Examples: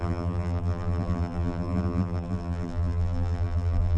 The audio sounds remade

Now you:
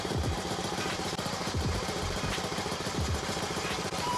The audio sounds remade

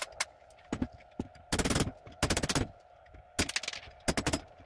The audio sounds recorded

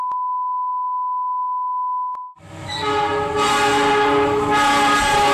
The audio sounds recorded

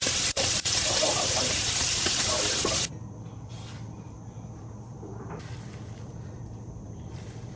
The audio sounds remade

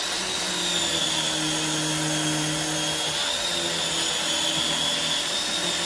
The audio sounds recorded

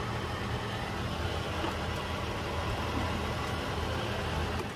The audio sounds recorded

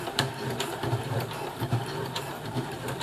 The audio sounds remade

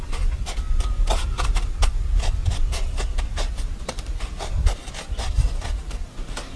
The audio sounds recorded